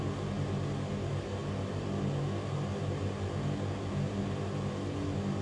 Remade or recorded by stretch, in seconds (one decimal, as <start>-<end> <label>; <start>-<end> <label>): 0.0-5.4 recorded